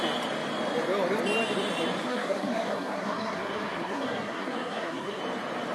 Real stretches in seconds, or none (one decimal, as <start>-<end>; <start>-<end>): 0.0-2.1; 5.2-5.7